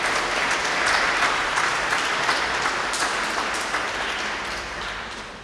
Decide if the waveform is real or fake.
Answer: real